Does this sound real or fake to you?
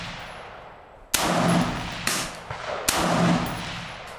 real